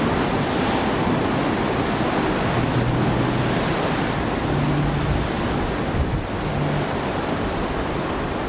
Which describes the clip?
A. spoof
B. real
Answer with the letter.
B